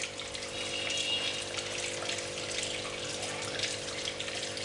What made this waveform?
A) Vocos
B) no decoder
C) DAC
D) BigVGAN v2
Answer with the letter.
B